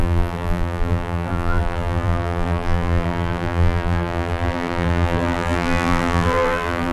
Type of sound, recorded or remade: remade